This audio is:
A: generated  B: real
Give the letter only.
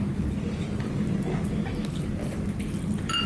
B